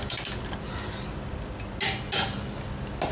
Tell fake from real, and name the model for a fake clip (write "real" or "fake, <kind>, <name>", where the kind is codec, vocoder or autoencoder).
real